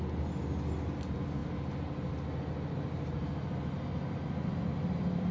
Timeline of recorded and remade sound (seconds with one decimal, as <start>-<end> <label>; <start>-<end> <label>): 0.0-5.3 recorded